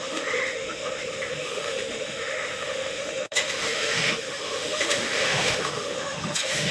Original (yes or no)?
no